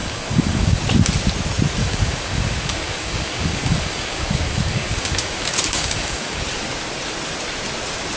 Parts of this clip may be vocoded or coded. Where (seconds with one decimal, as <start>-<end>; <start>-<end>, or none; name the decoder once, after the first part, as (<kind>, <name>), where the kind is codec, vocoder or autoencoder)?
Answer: 0.0-0.8 (codec, DAC); 1.8-6.4